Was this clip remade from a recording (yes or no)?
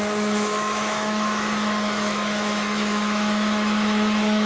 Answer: yes